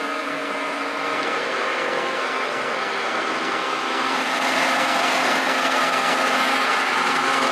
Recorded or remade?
remade